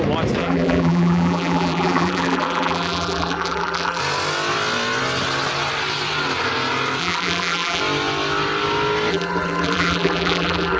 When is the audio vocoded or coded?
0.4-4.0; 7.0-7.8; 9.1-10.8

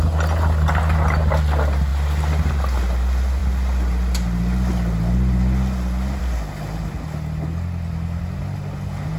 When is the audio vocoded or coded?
none

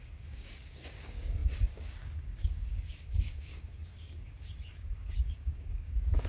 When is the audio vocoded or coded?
0.0-6.3

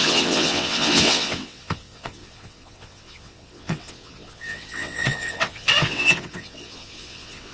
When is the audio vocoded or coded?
0.0-7.5

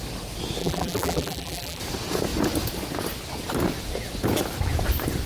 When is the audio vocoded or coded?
0.6-1.8

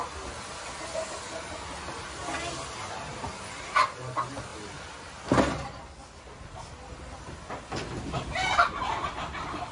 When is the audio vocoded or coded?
none

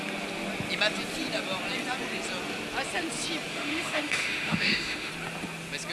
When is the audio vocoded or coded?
3.5-5.1